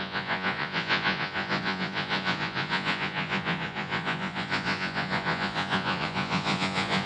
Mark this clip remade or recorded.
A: remade